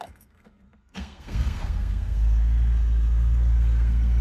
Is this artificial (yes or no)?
yes